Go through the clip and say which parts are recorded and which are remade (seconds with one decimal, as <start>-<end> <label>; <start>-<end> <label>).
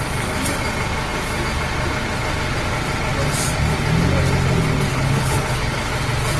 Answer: 0.0-4.9 recorded; 4.9-5.9 remade; 5.9-6.4 recorded